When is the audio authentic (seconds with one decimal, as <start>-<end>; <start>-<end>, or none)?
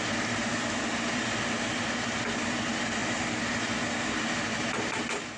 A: 0.0-5.4